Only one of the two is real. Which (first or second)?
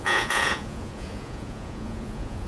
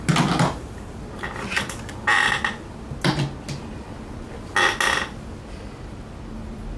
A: second